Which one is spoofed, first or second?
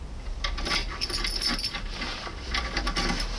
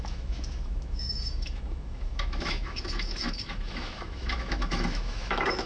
second